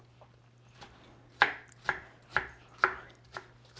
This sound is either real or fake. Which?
real